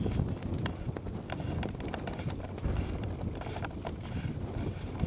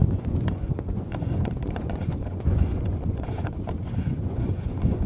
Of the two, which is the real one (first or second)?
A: first